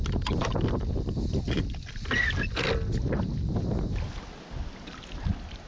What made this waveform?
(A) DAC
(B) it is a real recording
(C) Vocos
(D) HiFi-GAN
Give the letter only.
B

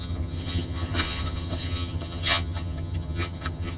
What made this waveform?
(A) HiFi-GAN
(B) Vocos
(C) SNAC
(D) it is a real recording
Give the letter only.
A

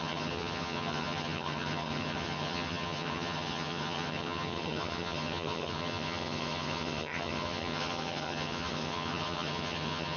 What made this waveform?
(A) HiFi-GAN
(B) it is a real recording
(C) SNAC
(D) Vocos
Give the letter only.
A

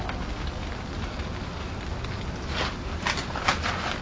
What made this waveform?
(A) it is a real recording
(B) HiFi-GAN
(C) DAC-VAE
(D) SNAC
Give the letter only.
A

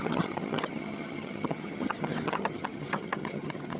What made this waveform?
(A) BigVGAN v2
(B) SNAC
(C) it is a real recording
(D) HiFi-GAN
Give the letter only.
D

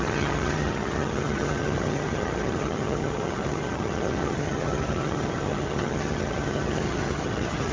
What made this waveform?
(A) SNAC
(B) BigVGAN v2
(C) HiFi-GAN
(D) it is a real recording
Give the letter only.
C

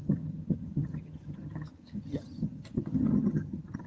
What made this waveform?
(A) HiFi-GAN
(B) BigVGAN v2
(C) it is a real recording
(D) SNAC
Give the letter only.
A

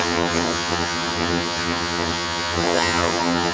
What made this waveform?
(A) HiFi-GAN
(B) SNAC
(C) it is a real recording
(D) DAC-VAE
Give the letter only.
A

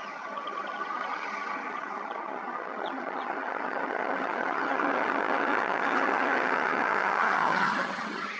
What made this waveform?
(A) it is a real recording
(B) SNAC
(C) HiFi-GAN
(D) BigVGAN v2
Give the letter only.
C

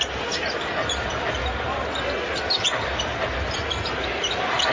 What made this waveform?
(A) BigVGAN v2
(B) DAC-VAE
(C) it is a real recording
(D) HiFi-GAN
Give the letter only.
C